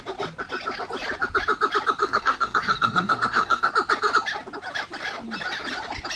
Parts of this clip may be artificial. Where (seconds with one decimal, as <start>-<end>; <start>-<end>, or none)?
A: 2.0-3.7